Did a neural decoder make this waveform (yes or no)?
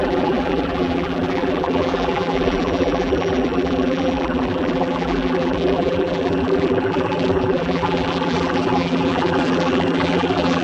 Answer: yes